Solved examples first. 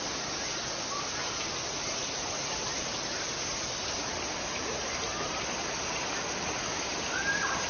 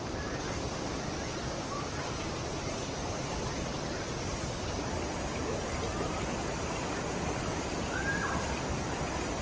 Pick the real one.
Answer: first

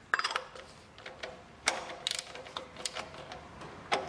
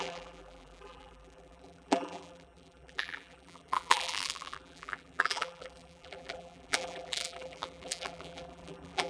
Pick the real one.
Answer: first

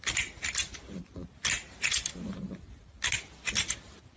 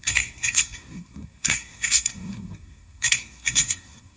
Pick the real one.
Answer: first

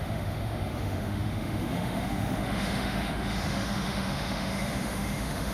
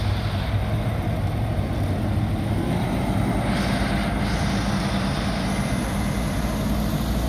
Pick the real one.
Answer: second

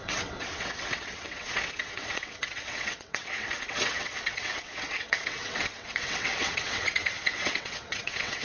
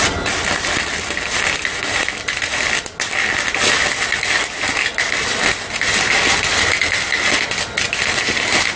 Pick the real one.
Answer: second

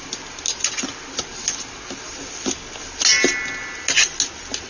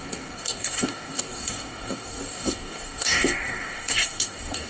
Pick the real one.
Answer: first